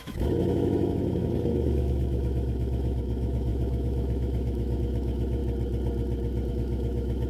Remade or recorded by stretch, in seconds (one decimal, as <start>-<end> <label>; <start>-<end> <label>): 0.0-5.4 remade; 5.4-6.5 recorded; 6.5-7.3 remade